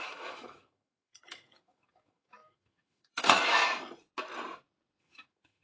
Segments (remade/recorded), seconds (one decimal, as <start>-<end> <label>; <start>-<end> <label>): 0.0-3.6 remade; 3.6-5.0 recorded; 5.0-5.6 remade